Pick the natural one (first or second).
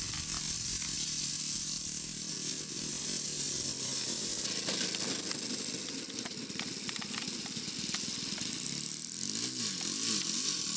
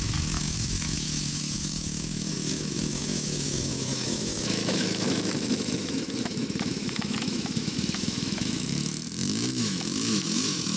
first